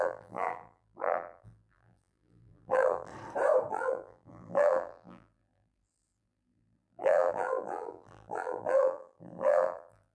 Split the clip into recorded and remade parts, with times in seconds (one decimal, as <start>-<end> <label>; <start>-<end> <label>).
0.0-3.1 remade; 3.1-3.7 recorded; 3.7-10.1 remade